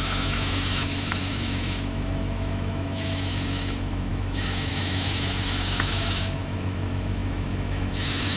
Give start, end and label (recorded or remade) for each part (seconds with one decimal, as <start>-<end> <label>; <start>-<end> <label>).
0.0-8.4 remade